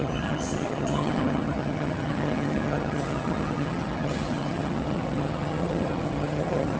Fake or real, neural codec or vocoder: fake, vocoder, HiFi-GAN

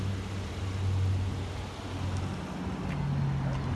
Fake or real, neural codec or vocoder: real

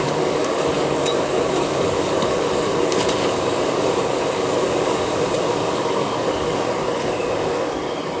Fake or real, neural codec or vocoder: fake, codec, DAC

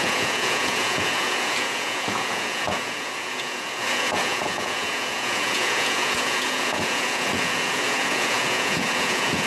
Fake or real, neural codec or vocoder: fake, vocoder, Vocos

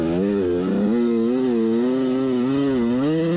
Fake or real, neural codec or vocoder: real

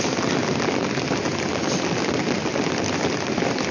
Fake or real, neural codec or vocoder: real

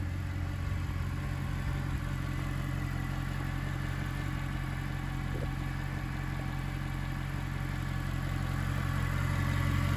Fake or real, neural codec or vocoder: real